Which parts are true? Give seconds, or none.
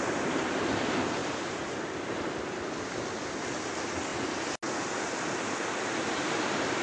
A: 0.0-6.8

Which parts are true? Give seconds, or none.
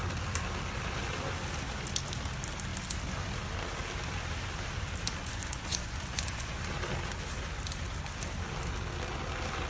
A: 0.0-5.2; 6.6-9.7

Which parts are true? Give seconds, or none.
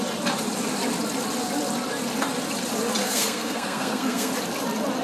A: 0.0-3.0; 4.3-5.0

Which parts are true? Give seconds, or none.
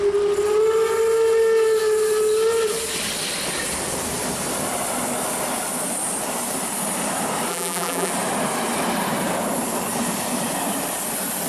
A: 0.0-7.5; 8.1-11.5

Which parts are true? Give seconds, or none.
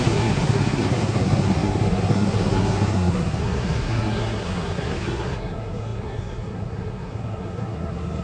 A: none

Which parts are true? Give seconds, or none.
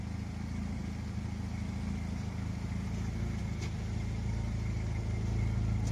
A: 0.0-5.9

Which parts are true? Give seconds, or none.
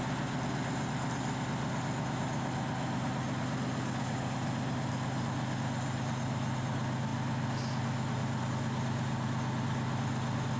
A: 0.0-10.6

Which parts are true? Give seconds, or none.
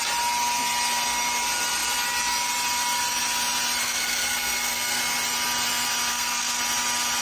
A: 0.0-3.8; 5.0-6.1; 6.6-7.2